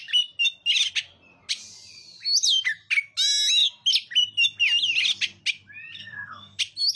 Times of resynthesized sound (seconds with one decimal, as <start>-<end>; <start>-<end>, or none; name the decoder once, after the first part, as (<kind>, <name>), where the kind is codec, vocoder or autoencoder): 6.0-6.6 (codec, SNAC)